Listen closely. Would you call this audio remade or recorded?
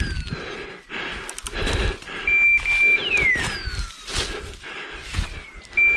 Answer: recorded